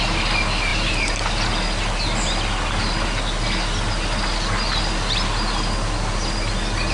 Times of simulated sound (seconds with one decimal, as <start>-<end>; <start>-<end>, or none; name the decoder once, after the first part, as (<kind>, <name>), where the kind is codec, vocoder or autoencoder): none